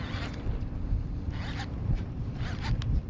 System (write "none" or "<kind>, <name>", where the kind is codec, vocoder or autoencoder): none